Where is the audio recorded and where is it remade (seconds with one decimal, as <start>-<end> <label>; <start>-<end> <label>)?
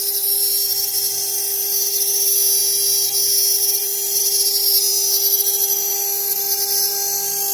0.0-7.5 recorded